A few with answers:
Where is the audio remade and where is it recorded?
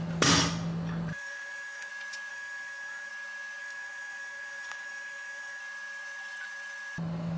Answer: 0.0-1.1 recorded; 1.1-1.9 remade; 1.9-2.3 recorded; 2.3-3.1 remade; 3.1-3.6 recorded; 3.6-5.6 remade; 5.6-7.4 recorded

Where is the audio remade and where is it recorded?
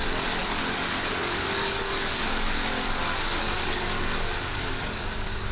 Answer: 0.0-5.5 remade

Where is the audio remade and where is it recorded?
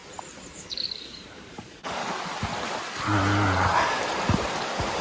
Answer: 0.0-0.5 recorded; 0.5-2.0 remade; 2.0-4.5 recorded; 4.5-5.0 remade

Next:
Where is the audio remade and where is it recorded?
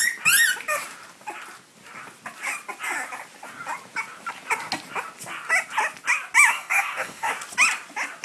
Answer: 0.0-6.5 recorded; 6.5-7.3 remade; 7.3-8.2 recorded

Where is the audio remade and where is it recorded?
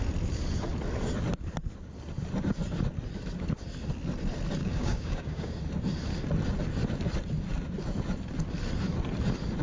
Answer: 0.0-4.6 recorded; 4.6-5.6 remade; 5.6-9.6 recorded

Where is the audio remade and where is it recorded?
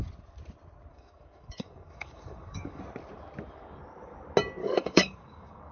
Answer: 0.0-0.9 recorded; 0.9-2.8 remade; 2.8-4.6 recorded; 4.6-5.7 remade